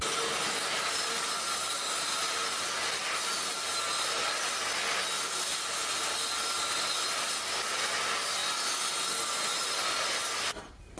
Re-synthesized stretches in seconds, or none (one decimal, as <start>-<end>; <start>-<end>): none